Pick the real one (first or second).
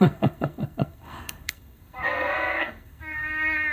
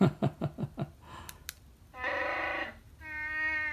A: second